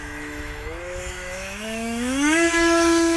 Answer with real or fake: fake